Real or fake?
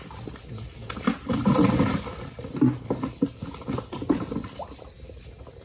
real